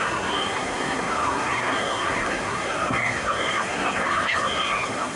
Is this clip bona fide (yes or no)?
no